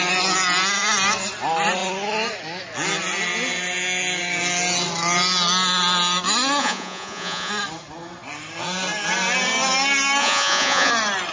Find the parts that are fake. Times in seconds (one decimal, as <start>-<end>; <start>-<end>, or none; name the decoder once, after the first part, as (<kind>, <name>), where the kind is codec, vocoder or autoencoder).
6.6-7.5 (vocoder, Vocos); 10.2-10.9